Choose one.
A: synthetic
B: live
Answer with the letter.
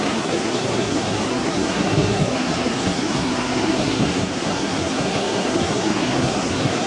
A